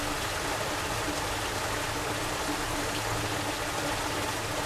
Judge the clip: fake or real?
real